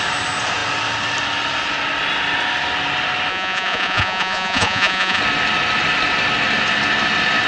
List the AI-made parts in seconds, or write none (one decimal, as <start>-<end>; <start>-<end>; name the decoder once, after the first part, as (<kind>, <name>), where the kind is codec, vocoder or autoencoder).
3.3-5.2 (vocoder, Vocos)